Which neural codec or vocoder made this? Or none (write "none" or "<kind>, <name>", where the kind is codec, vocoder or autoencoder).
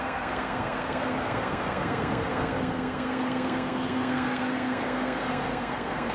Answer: codec, SNAC